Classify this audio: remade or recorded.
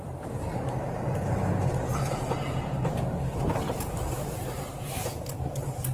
remade